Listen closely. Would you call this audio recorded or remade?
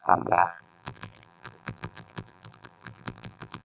remade